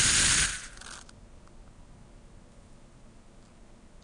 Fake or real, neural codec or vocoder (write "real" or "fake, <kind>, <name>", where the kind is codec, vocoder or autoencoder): real